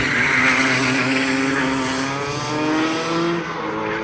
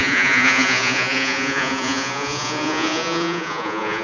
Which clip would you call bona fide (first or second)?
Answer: first